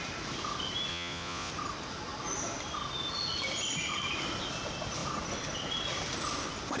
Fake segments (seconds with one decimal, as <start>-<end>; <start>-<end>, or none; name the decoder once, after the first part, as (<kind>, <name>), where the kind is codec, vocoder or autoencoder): 0.9-1.5 (vocoder, Vocos)